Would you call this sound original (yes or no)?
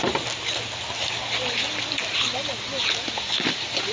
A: yes